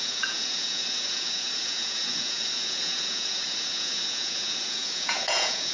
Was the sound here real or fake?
fake